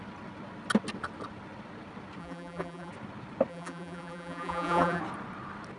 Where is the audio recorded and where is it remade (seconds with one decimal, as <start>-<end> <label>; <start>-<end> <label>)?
0.0-2.2 recorded; 2.2-2.9 remade; 2.9-3.5 recorded; 3.5-5.0 remade; 5.0-5.8 recorded